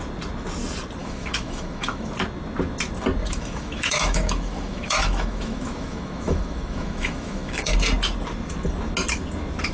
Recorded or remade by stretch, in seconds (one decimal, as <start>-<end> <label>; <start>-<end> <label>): 0.0-1.0 recorded; 1.0-2.1 remade; 2.1-3.2 recorded; 3.2-7.7 remade; 7.7-9.7 recorded